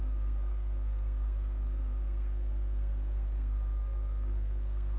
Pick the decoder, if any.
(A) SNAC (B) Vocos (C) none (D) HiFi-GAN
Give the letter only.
A